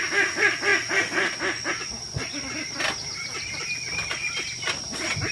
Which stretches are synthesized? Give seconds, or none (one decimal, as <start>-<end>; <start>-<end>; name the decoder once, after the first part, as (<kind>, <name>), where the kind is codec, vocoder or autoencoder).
none

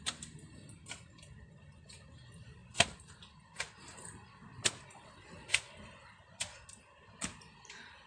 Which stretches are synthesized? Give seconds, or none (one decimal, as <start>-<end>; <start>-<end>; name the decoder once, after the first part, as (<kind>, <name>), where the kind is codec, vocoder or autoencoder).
none

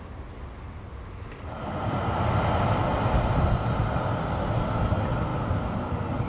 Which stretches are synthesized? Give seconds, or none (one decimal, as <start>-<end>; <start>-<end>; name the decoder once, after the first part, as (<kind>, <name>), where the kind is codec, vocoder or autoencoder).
none

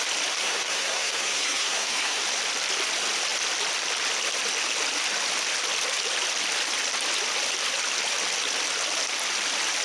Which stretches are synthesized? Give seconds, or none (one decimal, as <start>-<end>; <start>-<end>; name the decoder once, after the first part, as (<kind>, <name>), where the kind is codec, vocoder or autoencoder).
0.4-2.2 (codec, SNAC)